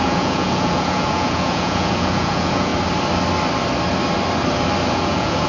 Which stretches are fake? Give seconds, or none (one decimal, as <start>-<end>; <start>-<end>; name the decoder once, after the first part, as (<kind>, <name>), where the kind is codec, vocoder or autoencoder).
0.0-2.7 (vocoder, Vocos); 4.9-5.5